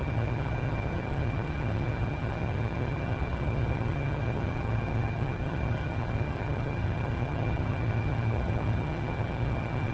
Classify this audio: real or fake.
fake